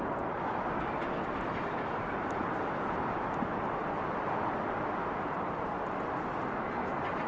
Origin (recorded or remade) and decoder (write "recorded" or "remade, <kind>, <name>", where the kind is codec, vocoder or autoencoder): recorded